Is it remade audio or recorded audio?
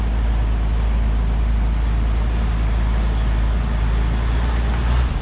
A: recorded